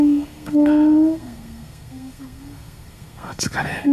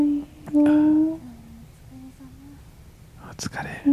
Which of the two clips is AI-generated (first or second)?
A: first